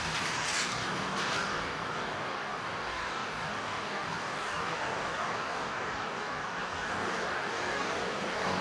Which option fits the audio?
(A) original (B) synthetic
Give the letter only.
B